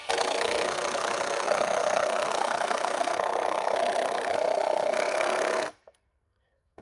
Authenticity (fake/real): fake